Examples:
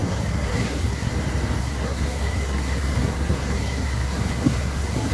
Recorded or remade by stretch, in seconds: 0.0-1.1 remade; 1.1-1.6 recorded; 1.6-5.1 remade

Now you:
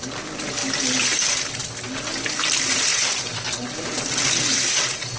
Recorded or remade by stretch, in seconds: 0.0-5.2 recorded

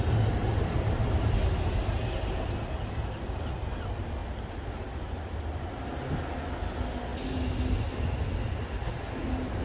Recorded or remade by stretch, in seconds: 0.0-9.6 recorded

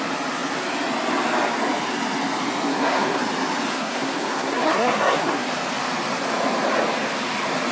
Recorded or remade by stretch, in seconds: 0.0-2.7 recorded; 2.7-3.2 remade; 3.2-3.7 recorded; 3.7-5.5 remade; 5.5-7.7 recorded

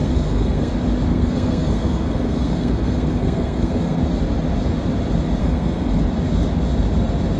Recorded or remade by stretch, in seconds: 0.0-0.7 remade; 0.7-1.1 recorded; 1.1-4.0 remade; 4.0-5.4 recorded; 5.4-6.0 remade; 6.0-7.4 recorded

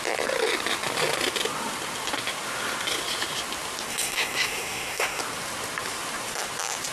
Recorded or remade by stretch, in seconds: 0.0-3.9 recorded; 3.9-5.2 remade; 5.2-6.9 recorded

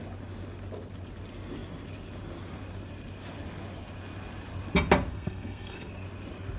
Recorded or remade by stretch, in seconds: 0.0-5.1 recorded; 5.1-5.9 remade; 5.9-6.6 recorded

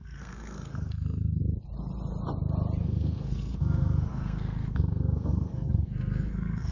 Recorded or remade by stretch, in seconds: 0.0-1.4 remade; 1.4-2.8 recorded; 2.8-6.7 remade